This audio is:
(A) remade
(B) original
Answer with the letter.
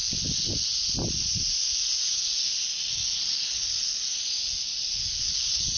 B